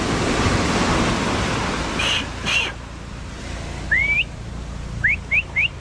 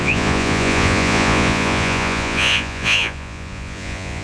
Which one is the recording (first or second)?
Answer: first